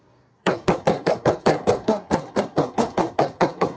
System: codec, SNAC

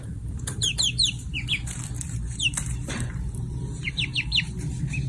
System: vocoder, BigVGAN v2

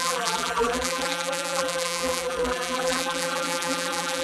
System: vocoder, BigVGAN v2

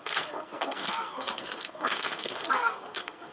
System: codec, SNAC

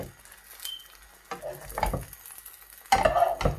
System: none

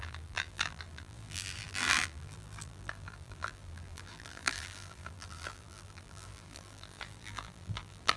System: vocoder, BigVGAN v2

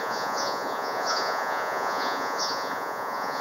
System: vocoder, Vocos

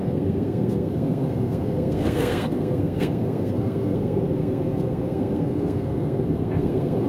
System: codec, SNAC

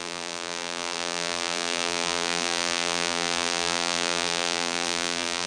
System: vocoder, BigVGAN v2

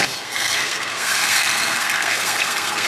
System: codec, SNAC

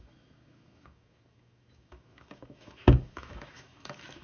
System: autoencoder, DAC-VAE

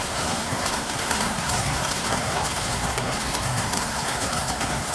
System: codec, SNAC